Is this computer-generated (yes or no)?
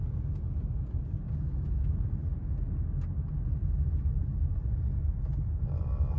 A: no